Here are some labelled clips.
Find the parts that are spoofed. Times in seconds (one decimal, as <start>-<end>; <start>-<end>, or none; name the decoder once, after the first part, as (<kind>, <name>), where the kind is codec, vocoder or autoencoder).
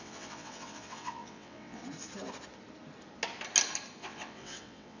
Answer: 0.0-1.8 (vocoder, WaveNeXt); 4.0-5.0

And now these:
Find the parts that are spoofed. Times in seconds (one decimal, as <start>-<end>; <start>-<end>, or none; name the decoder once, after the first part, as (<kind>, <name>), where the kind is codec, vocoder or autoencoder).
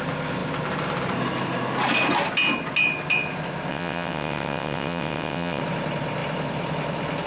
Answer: 3.7-5.6 (vocoder, WaveNeXt)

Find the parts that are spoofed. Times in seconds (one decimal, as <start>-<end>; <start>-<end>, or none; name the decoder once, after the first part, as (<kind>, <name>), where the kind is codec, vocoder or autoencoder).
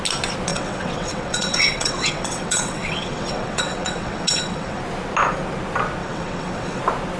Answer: 0.5-4.8 (vocoder, WaveNeXt); 6.0-6.8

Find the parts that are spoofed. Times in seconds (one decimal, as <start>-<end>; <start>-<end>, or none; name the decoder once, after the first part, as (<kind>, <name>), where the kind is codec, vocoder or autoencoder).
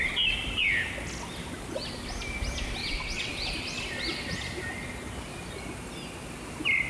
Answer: 2.8-3.3 (vocoder, WaveNeXt)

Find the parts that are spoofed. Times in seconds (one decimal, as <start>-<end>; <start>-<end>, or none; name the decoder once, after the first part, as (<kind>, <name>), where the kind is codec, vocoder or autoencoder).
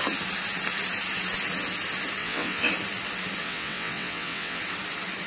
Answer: 2.2-2.7 (vocoder, WaveNeXt); 3.4-4.6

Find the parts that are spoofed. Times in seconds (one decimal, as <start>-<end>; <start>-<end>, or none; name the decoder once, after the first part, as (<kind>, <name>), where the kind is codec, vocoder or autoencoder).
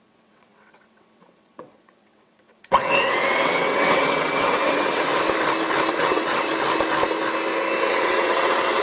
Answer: 0.0-5.1 (vocoder, WaveNeXt); 5.9-6.5; 7.9-8.8